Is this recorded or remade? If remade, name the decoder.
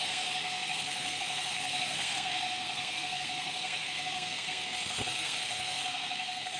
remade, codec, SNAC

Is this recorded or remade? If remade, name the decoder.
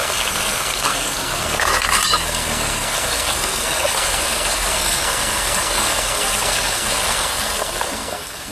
remade, codec, SNAC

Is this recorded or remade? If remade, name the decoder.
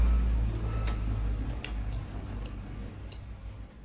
recorded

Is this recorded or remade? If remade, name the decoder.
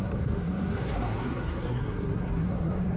remade, codec, SNAC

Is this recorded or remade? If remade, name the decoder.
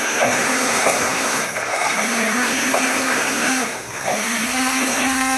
remade, codec, SNAC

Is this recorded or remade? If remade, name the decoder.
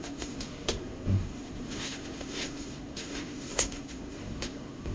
remade, codec, SNAC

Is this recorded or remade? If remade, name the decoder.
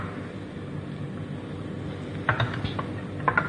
recorded